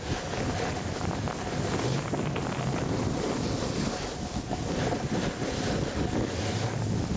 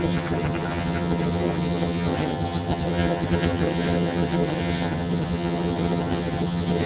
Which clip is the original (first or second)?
first